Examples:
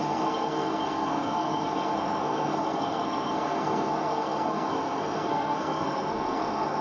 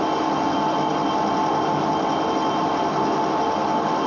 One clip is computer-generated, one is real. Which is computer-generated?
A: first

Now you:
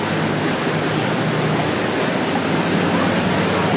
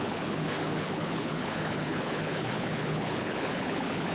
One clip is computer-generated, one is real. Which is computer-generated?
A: second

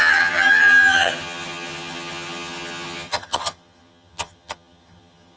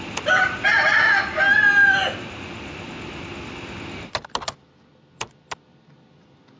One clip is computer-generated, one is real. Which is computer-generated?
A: first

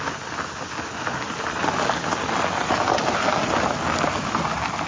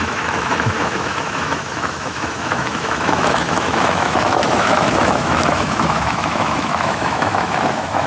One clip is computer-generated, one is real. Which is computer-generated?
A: second